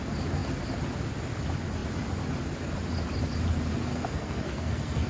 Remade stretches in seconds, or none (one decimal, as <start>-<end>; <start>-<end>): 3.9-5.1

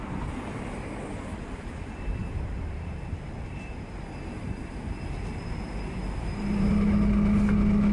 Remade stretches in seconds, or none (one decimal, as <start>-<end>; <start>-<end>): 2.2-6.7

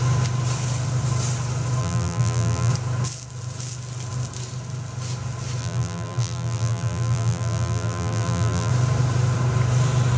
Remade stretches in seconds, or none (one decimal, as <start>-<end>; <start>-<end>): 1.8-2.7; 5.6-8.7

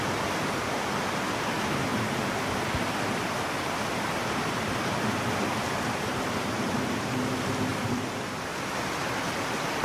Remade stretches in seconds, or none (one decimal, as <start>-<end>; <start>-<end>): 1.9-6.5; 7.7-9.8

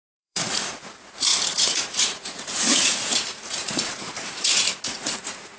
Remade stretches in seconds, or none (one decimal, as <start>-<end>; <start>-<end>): 0.0-5.6

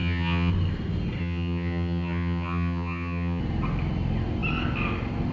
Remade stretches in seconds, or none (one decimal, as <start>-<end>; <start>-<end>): 0.0-0.5; 1.2-3.4

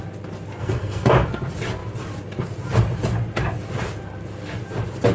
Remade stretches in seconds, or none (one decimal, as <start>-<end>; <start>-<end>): 0.6-1.1